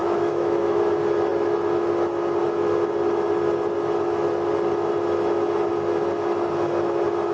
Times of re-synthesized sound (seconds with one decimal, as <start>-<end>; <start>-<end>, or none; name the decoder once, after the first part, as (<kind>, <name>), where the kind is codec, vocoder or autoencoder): 0.0-0.8 (autoencoder, DAC-VAE)